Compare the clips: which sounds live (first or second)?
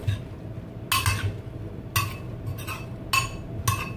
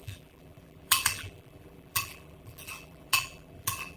first